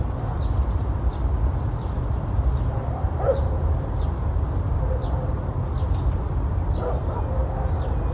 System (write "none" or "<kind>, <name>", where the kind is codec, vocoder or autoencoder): none